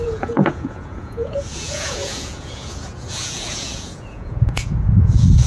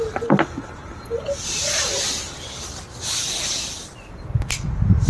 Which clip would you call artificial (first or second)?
first